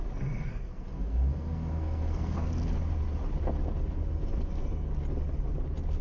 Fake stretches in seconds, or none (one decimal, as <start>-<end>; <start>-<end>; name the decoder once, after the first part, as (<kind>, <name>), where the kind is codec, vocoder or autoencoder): 0.5-2.5 (codec, SNAC)